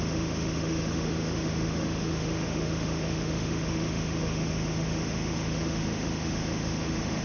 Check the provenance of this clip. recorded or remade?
remade